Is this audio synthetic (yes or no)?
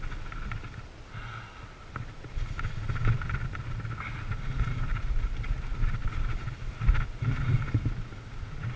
no